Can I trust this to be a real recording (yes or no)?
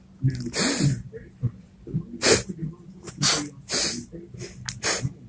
yes